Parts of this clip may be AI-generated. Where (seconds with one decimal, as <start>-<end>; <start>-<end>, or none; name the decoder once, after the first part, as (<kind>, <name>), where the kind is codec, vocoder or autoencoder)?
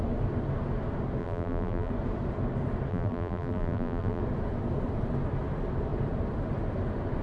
1.2-1.9 (vocoder, BigVGAN v2); 2.9-4.2